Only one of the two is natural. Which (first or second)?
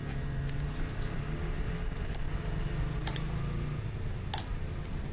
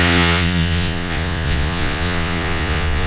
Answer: first